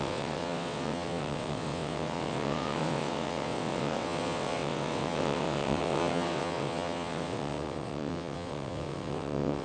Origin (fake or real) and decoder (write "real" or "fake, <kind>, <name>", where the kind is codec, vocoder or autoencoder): fake, vocoder, WaveNeXt